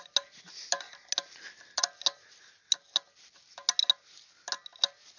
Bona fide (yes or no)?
yes